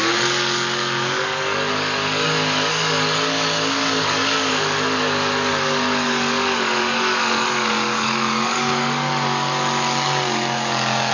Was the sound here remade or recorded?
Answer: remade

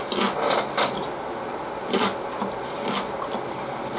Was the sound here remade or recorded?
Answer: recorded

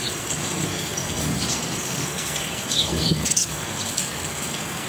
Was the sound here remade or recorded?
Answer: remade